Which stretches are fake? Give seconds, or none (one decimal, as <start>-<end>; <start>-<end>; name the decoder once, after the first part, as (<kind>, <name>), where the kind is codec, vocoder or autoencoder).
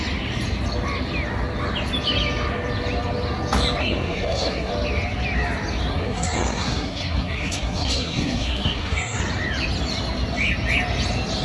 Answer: 3.8-4.7 (codec, SNAC); 5.9-9.2